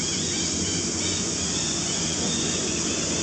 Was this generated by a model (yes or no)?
yes